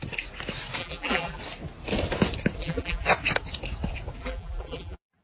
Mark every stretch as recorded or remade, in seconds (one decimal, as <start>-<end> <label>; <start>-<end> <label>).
0.0-0.8 recorded; 0.8-1.4 remade; 1.4-2.6 recorded; 2.6-3.1 remade; 3.1-4.2 recorded; 4.2-5.2 remade